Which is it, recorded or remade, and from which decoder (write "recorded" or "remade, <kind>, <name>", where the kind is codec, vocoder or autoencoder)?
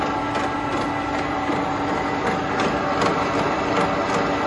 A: recorded